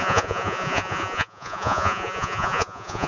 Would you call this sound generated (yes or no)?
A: yes